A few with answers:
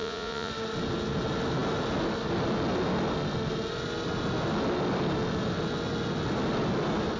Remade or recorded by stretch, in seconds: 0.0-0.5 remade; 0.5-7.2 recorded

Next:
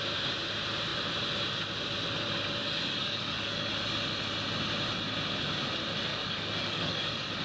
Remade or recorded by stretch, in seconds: 0.0-2.6 recorded; 2.6-3.7 remade; 3.7-6.1 recorded; 6.1-7.4 remade

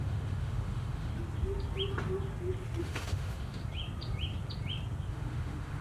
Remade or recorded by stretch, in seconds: 0.0-1.1 remade; 1.1-2.8 recorded; 2.8-3.6 remade; 3.6-5.1 recorded; 5.1-5.8 remade

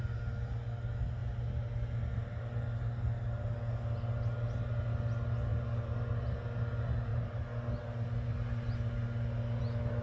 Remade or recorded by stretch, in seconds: 0.0-10.0 recorded

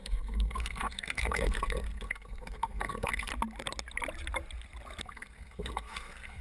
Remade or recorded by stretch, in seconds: 0.0-3.3 remade; 3.3-5.0 recorded; 5.0-6.4 remade

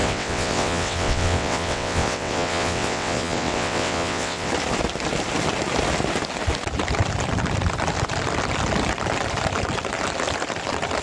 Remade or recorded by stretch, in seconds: 0.0-4.5 remade; 4.5-11.0 recorded

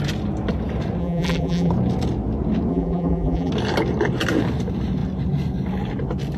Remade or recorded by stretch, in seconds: 0.0-1.0 recorded; 1.0-1.7 remade; 1.7-2.7 recorded; 2.7-3.5 remade; 3.5-6.4 recorded

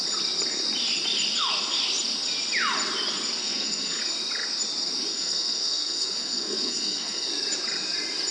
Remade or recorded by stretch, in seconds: 0.0-3.4 recorded; 3.4-4.0 remade; 4.0-5.1 recorded; 5.1-7.3 remade; 7.3-8.3 recorded